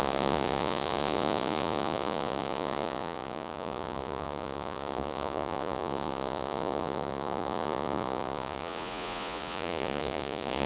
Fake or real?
fake